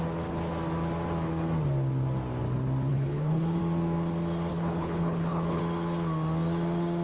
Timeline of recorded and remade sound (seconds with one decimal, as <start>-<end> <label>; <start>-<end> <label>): 0.0-2.9 recorded; 2.9-3.6 remade; 3.6-4.5 recorded; 4.5-5.6 remade; 5.6-7.0 recorded